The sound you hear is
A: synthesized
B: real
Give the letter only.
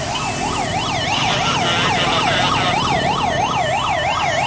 B